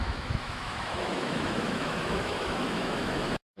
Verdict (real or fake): fake